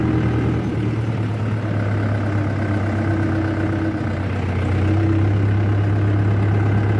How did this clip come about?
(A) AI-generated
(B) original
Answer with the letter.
B